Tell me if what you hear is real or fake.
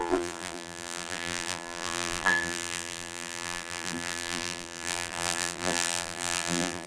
fake